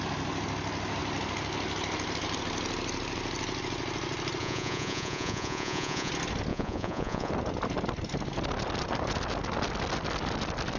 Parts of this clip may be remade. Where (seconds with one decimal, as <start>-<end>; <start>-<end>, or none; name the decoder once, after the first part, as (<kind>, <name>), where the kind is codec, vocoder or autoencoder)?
4.4-6.1 (vocoder, Vocos); 6.5-7.3